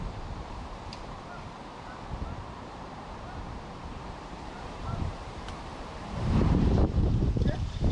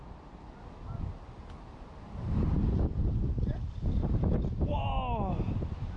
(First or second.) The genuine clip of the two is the second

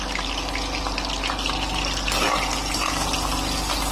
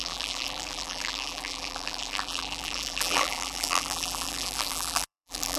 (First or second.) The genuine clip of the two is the first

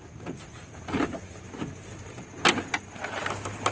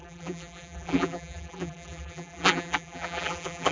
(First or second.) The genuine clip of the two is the first